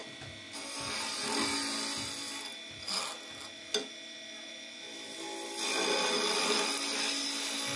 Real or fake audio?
real